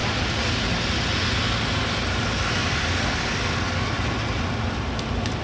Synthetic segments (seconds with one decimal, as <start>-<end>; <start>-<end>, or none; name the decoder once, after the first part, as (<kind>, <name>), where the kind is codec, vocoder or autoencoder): none